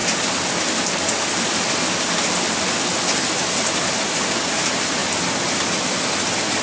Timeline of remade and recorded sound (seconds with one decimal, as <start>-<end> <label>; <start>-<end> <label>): 0.0-6.6 recorded